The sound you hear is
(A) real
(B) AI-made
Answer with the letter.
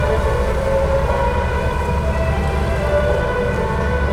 A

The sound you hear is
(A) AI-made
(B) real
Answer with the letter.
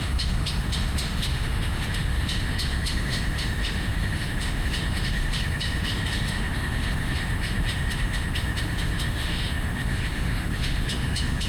A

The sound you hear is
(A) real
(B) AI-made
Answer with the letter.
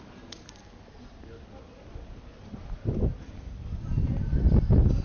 A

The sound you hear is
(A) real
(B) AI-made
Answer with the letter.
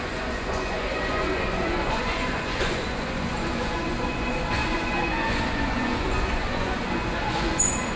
B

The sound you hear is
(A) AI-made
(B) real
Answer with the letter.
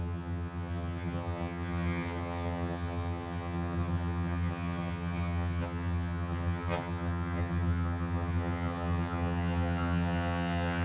A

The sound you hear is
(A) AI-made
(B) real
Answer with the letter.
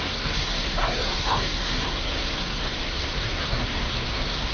A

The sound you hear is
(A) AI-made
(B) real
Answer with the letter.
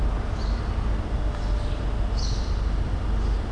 B